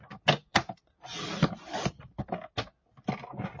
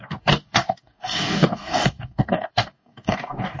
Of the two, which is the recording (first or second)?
first